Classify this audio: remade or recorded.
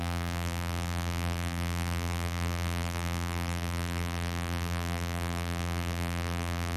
remade